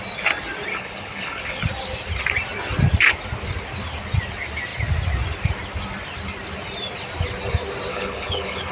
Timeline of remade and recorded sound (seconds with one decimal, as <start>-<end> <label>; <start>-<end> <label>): 0.0-0.7 recorded; 0.7-1.6 remade; 1.6-7.9 recorded; 7.9-8.7 remade